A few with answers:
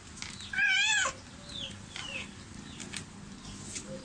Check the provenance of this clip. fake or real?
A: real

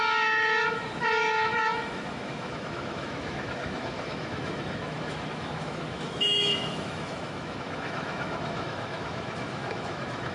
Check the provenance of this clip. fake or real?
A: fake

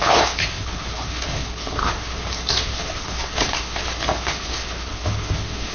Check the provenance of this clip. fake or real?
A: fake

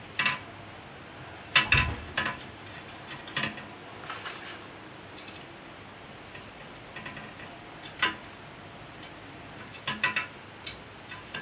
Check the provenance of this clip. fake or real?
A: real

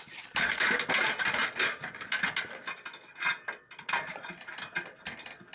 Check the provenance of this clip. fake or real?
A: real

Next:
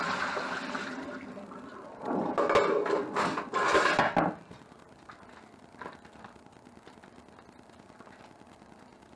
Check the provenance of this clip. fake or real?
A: real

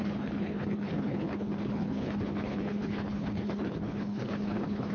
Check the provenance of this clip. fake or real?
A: fake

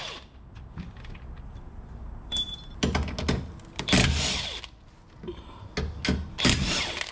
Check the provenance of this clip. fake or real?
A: real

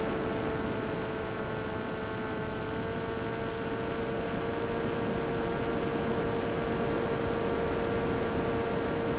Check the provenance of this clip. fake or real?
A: real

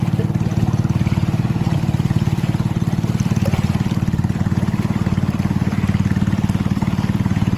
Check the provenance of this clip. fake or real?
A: fake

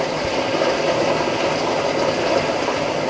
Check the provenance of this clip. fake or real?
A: real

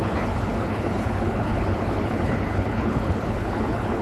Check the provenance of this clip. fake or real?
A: fake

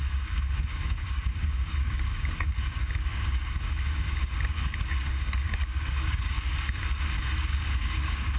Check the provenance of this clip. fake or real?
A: fake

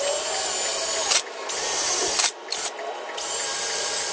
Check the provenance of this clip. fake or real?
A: real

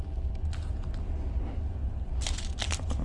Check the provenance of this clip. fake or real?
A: real